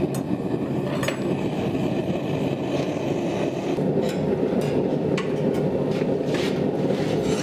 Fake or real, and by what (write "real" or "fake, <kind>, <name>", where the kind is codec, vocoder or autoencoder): real